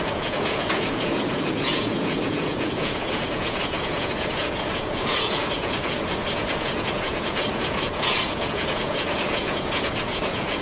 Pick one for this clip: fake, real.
fake